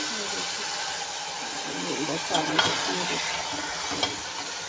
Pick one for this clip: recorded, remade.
recorded